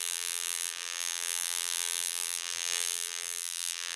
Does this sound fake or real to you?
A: fake